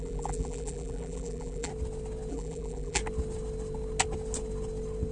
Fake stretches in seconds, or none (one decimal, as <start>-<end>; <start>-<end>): 0.0-1.7; 2.3-3.0